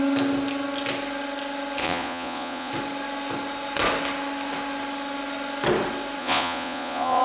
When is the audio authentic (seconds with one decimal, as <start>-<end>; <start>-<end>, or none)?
0.0-1.8; 2.7-6.2